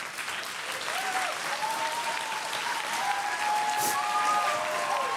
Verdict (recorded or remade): recorded